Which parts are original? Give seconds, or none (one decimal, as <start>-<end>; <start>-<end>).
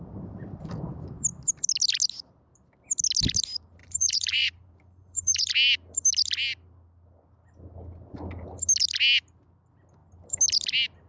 0.0-3.8; 5.5-11.1